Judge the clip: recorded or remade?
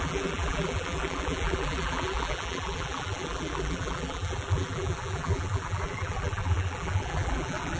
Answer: remade